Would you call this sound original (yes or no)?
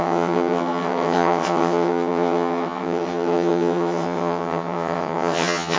no